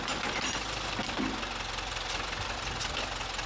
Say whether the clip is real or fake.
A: real